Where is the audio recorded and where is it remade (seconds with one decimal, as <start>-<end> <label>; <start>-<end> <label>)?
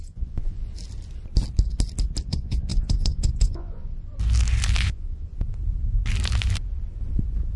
0.0-0.7 remade; 0.7-2.3 recorded; 2.3-3.8 remade; 3.8-4.8 recorded; 4.8-5.3 remade; 5.3-7.6 recorded